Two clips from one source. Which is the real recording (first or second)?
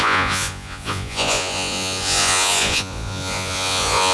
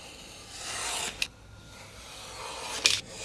second